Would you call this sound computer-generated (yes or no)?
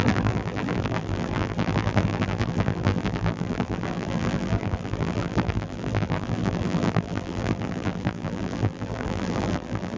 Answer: yes